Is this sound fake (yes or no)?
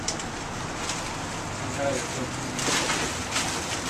no